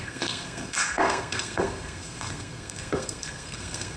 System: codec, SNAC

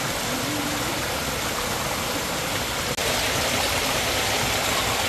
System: none